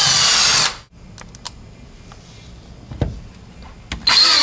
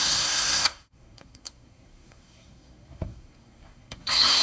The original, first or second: first